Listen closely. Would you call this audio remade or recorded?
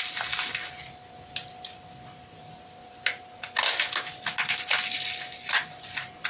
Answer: recorded